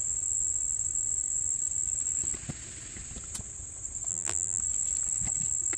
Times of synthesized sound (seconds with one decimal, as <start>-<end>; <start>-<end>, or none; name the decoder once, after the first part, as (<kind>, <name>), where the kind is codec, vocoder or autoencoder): 4.1-4.6 (vocoder, BigVGAN v2)